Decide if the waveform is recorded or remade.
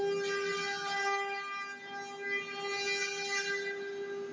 recorded